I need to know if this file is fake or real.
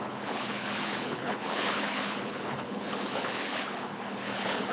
fake